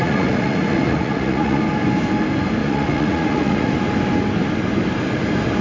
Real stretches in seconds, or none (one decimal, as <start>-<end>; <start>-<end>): 1.6-2.6; 3.7-5.6